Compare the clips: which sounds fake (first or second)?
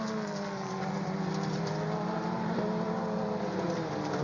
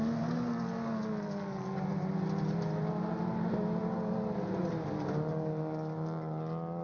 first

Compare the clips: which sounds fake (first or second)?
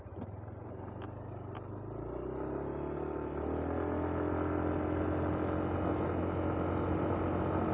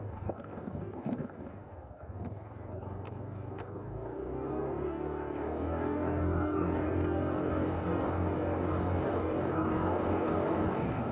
second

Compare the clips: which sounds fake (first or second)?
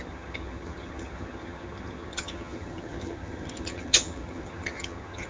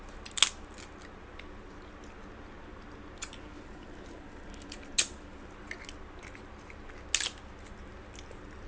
first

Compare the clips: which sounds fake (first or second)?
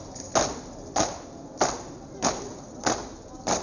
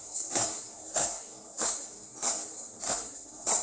second